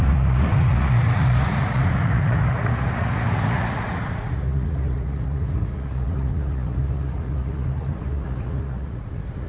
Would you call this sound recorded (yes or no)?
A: no